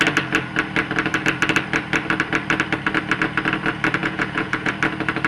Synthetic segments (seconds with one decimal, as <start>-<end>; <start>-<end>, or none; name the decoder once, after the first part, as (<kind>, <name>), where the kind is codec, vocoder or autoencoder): 4.0-4.7 (vocoder, Vocos)